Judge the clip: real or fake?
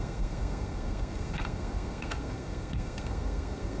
fake